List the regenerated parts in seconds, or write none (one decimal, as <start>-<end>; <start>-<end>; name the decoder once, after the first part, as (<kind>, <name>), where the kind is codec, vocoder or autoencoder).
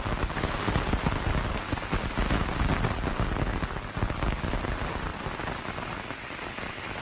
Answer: 5.1-5.6 (vocoder, BigVGAN v2)